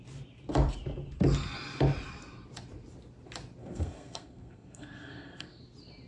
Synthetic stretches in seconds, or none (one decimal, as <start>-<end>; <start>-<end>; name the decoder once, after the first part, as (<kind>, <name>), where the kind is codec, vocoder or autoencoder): 3.6-5.6 (codec, SNAC)